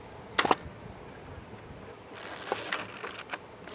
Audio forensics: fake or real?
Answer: real